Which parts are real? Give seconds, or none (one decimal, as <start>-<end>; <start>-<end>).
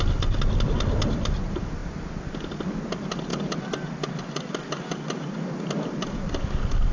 0.0-6.9